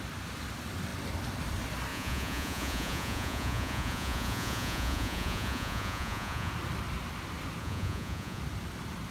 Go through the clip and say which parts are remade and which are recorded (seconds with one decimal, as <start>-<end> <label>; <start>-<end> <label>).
0.0-1.9 recorded; 1.9-6.5 remade; 6.5-7.6 recorded; 7.6-8.4 remade; 8.4-9.1 recorded